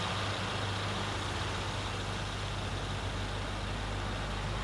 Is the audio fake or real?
real